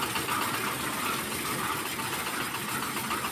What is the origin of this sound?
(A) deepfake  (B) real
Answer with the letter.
B